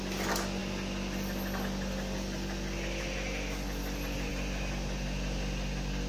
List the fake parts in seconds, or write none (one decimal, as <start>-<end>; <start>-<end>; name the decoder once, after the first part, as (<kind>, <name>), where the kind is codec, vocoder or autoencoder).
none